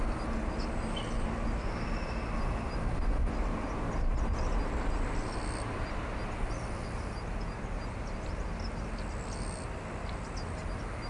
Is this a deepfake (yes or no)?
no